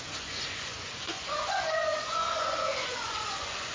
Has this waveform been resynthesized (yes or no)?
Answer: yes